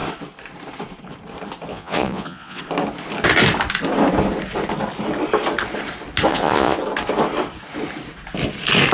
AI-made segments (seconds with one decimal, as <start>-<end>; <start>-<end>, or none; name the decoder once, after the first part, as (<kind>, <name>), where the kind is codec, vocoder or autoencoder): 1.7-2.6 (vocoder, Vocos); 6.3-6.8

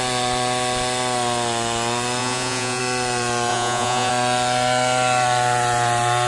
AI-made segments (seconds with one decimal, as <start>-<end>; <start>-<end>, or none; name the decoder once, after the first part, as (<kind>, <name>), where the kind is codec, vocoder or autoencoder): 2.2-2.8 (vocoder, Vocos); 3.5-4.1